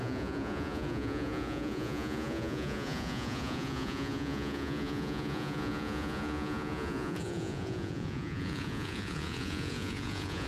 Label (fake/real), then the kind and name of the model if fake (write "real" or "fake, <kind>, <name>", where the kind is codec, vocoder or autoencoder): fake, vocoder, Vocos